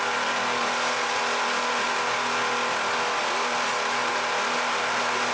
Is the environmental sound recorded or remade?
recorded